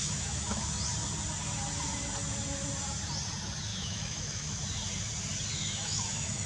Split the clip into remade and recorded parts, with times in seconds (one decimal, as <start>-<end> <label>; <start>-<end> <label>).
0.0-0.8 remade; 0.8-3.7 recorded; 3.7-4.6 remade; 4.6-5.5 recorded; 5.5-6.5 remade